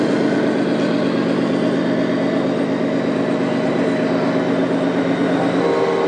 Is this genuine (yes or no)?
yes